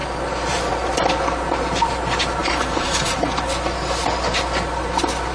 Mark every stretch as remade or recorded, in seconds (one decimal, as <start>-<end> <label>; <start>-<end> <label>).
0.0-2.4 recorded; 2.4-3.2 remade; 3.2-5.3 recorded